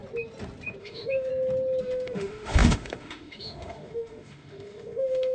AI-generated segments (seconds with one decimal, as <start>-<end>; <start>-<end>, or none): 0.8-1.3; 1.8-5.3